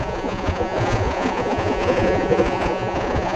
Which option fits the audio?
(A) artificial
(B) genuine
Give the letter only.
A